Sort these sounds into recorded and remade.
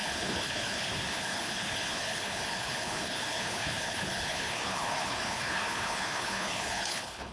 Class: remade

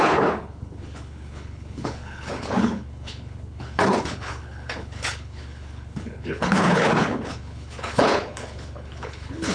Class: remade